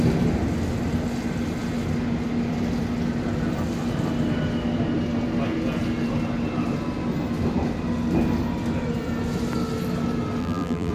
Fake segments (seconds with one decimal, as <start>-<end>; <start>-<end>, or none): 10.4-10.9